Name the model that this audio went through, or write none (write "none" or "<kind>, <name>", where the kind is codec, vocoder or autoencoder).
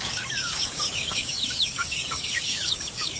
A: codec, DAC